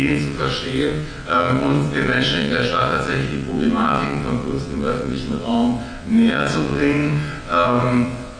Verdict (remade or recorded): remade